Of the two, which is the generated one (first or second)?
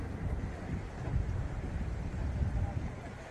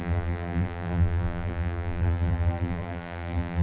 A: second